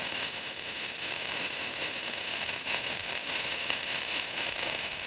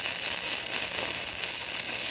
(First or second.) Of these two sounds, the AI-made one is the first